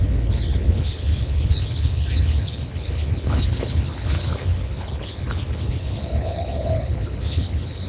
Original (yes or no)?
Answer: no